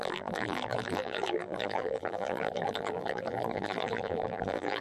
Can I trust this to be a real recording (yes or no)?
no